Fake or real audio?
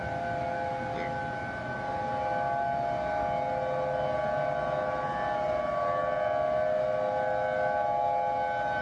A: real